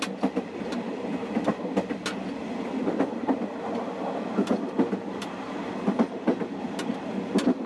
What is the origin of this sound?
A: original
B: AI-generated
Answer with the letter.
A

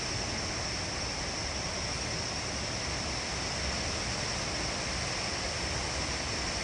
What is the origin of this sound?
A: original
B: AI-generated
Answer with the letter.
A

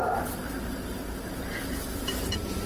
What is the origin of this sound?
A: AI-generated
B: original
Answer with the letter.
A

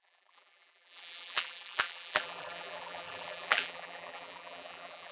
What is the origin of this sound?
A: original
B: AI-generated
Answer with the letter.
B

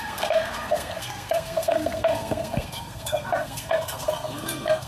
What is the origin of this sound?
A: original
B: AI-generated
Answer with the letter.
B